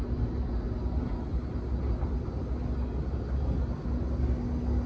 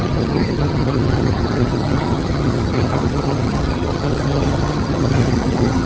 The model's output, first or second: second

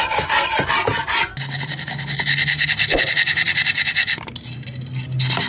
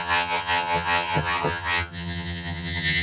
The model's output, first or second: second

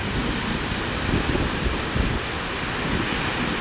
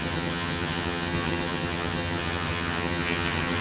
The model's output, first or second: second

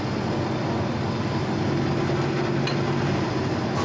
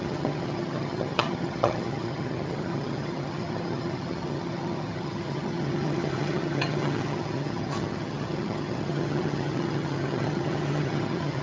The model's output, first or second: second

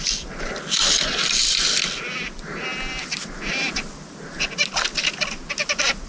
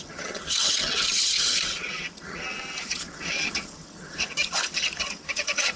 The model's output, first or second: second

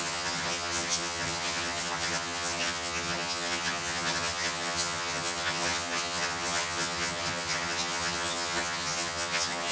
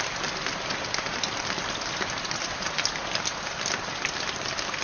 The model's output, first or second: first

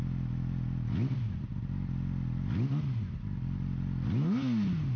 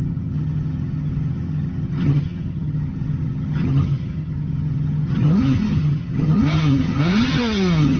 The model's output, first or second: second